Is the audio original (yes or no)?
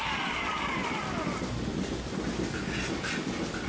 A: yes